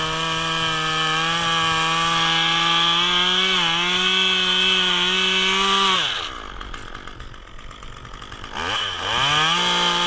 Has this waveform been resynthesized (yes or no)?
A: no